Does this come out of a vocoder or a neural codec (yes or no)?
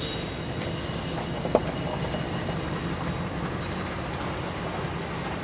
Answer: no